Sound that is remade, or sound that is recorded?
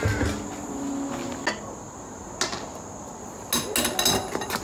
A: recorded